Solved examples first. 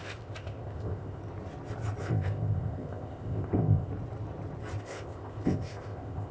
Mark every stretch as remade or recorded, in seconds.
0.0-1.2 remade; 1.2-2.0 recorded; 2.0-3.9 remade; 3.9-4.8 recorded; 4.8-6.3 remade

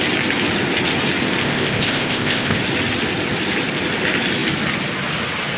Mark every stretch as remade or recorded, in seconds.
0.0-1.4 recorded; 1.4-2.6 remade; 2.6-5.6 recorded

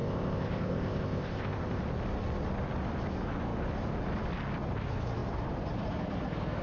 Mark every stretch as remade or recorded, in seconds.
0.0-1.8 remade; 1.8-6.6 recorded

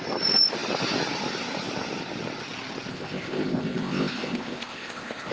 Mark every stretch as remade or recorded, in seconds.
0.0-2.9 recorded; 2.9-5.3 remade

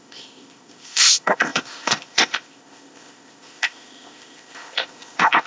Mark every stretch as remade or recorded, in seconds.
0.0-5.5 remade